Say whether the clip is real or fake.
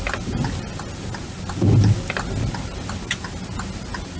real